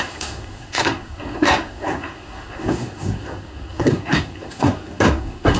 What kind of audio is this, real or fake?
fake